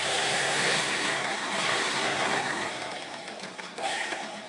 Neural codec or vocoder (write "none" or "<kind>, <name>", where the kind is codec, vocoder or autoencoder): codec, SNAC